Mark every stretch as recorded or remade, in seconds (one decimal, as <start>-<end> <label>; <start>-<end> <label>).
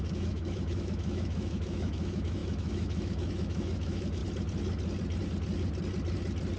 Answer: 0.0-4.2 remade; 4.2-6.6 recorded